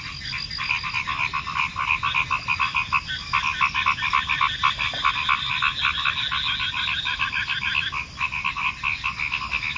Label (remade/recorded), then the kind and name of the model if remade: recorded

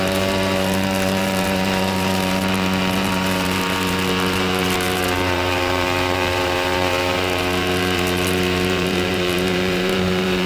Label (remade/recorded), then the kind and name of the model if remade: remade, vocoder, BigVGAN v2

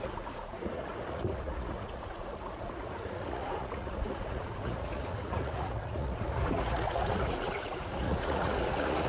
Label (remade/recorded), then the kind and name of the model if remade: remade, vocoder, Vocos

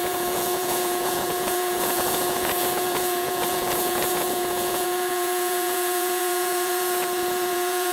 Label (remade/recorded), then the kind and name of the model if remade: remade, vocoder, Vocos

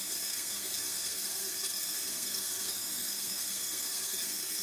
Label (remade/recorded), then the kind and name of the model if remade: remade, codec, SNAC